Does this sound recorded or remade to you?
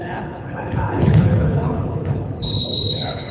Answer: remade